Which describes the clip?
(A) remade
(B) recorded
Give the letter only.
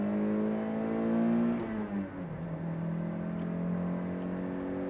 B